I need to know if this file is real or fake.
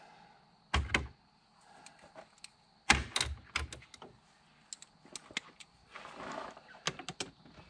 real